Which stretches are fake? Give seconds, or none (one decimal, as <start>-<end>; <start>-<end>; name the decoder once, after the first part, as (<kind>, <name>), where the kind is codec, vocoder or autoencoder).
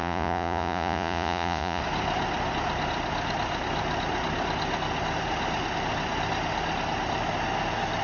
0.0-1.8 (vocoder, Vocos)